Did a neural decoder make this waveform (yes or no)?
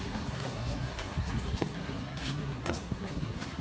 yes